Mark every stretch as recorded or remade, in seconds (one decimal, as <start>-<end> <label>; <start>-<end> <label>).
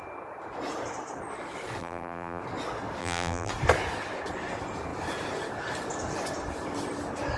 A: 0.0-1.8 recorded; 1.8-2.4 remade; 2.4-3.0 recorded; 3.0-3.5 remade; 3.5-7.4 recorded